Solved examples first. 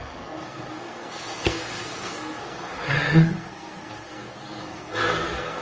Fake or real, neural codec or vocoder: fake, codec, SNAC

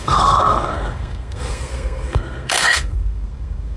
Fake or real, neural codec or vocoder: fake, codec, SNAC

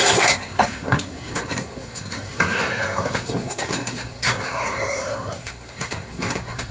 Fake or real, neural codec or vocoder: fake, codec, SNAC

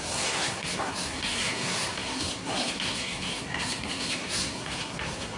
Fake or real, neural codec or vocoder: fake, codec, SNAC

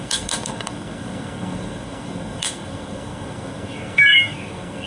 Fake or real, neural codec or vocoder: fake, codec, SNAC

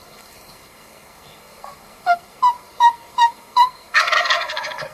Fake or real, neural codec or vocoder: fake, codec, SNAC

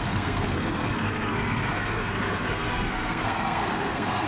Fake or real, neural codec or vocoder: fake, codec, SNAC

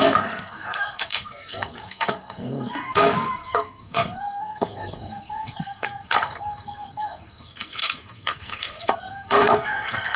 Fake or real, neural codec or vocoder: fake, codec, SNAC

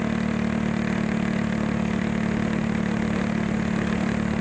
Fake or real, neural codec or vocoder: real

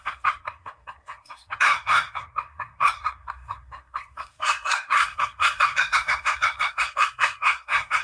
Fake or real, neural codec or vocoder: fake, codec, SNAC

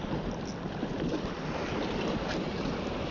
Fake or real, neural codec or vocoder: real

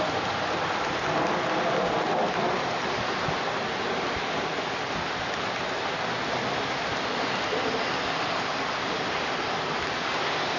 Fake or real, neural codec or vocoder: real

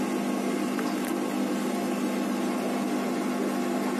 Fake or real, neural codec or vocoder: real